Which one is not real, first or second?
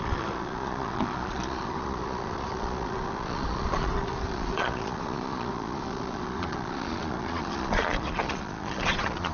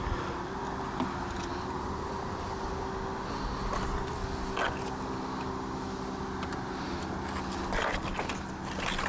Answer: first